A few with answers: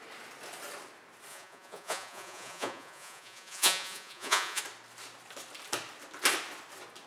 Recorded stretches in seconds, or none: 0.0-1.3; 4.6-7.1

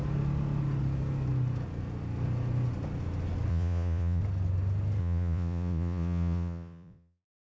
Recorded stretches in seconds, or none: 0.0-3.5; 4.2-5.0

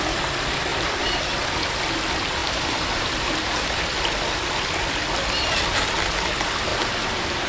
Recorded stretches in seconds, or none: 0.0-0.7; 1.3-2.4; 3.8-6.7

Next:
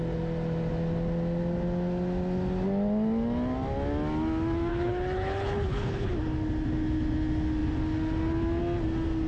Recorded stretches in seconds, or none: 0.0-4.7; 6.1-9.3